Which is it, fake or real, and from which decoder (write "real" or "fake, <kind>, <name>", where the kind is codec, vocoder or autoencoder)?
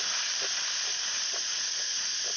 real